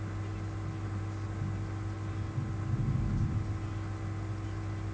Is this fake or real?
real